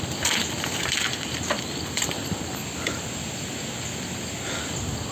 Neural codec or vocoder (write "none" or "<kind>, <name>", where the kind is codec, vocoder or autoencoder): vocoder, BigVGAN v2